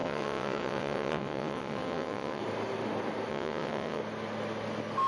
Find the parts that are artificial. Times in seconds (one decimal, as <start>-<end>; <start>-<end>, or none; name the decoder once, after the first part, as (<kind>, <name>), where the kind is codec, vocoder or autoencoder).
0.0-2.4 (vocoder, WaveNeXt); 3.3-4.0

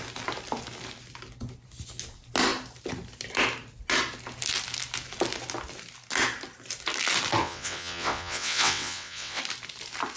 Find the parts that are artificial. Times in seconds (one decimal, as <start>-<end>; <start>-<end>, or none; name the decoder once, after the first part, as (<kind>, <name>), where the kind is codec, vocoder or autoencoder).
7.4-9.4 (vocoder, WaveNeXt)

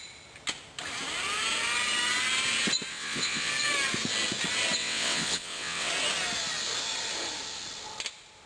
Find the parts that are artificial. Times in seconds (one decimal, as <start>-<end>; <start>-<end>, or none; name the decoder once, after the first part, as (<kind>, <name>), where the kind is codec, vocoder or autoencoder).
2.9-3.5 (vocoder, WaveNeXt); 4.8-5.9

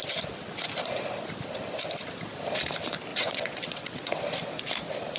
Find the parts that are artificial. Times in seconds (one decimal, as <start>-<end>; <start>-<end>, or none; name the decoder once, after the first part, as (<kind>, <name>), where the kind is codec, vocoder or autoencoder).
3.1-4.2 (vocoder, WaveNeXt)